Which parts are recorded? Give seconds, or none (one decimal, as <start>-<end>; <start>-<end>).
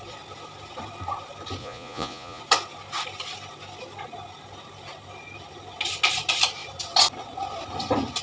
0.0-1.6; 2.4-8.2